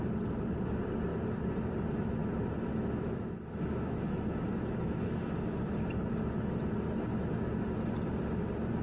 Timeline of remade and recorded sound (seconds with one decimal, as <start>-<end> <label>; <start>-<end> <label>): 0.0-2.7 recorded; 2.7-5.6 remade; 5.6-7.1 recorded; 7.1-7.9 remade; 7.9-8.8 recorded